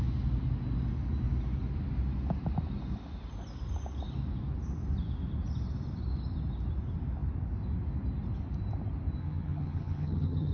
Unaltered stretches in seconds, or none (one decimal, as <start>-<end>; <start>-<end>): 0.0-9.2